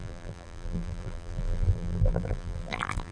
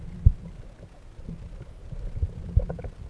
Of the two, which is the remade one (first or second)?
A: first